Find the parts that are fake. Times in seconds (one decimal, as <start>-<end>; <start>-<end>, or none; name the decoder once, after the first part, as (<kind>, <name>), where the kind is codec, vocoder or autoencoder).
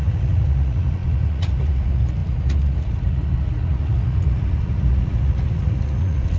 0.0-6.4 (vocoder, Vocos)